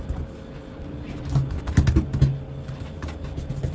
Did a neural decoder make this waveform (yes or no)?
no